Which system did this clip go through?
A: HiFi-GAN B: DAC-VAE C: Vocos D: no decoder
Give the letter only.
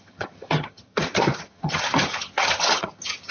A